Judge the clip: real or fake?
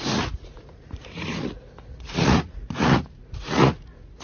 fake